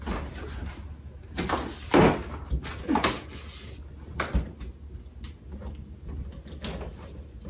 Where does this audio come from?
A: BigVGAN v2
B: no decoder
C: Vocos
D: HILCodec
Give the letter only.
B